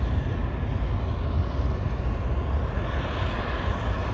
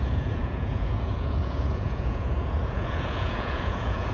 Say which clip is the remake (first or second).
second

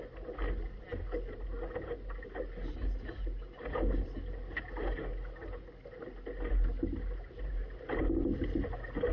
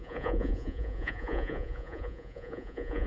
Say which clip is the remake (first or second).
second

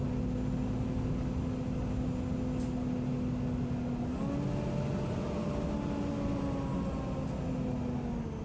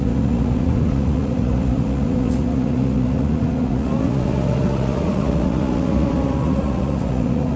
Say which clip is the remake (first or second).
second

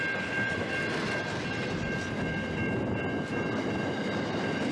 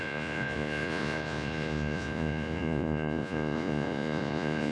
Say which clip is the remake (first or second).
second